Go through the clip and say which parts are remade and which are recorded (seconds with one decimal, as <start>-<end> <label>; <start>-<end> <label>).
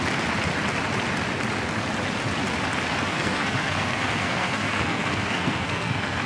0.0-3.1 recorded; 3.1-6.3 remade